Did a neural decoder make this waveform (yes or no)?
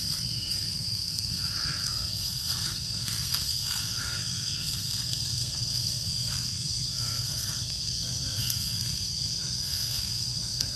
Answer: yes